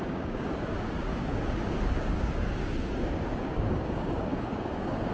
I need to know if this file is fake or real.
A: fake